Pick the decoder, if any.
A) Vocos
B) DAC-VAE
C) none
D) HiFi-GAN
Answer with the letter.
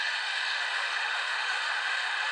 B